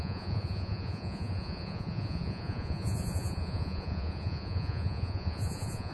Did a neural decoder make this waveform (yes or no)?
yes